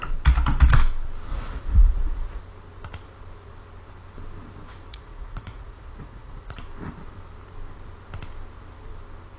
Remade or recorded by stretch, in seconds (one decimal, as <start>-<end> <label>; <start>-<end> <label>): 0.0-1.3 recorded; 1.3-2.4 remade; 2.4-4.9 recorded; 4.9-6.6 remade; 6.6-9.4 recorded